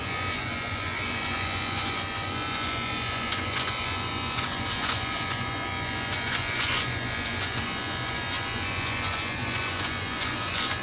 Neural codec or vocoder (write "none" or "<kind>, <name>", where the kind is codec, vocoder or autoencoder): vocoder, Vocos